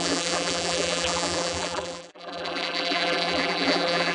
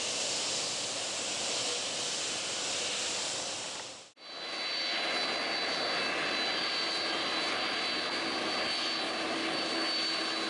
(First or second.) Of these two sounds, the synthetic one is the first